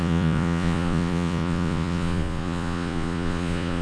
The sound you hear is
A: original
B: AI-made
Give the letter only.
B